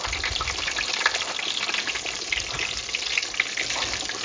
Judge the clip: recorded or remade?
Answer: recorded